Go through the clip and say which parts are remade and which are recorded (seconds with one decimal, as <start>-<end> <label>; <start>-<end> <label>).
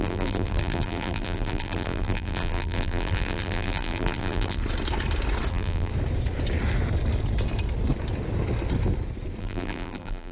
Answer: 0.0-4.6 remade; 4.6-5.5 recorded; 5.5-5.9 remade; 5.9-9.4 recorded; 9.4-10.3 remade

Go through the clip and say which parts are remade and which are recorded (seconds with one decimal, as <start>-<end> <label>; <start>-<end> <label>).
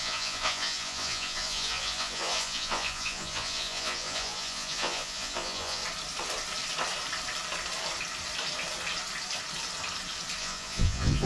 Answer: 0.0-5.8 remade; 5.8-10.4 recorded; 10.4-11.3 remade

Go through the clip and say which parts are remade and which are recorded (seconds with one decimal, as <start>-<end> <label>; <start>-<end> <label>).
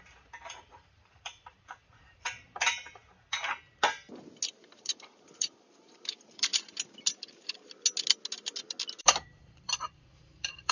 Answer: 0.0-3.0 remade; 3.0-4.5 recorded; 4.5-6.5 remade; 6.5-9.0 recorded; 9.0-10.7 remade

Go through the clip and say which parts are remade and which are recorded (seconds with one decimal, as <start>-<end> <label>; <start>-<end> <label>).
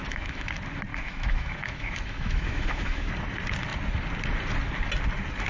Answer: 0.0-0.5 remade; 0.5-0.9 recorded; 0.9-3.1 remade; 3.1-5.5 recorded